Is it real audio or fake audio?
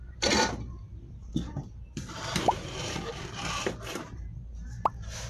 fake